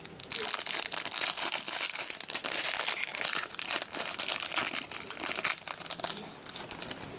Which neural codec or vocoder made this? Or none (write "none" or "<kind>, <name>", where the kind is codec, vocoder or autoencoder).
none